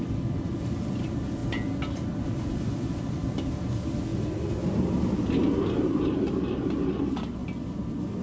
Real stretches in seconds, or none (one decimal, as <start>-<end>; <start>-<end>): 0.0-8.2